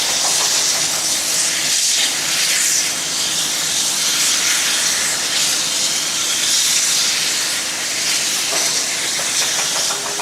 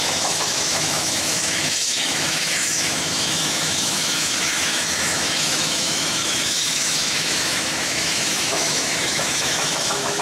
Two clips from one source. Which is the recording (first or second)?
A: first